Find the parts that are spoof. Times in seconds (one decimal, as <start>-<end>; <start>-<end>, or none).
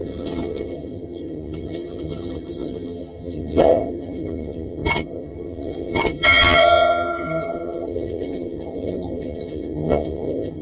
0.0-10.6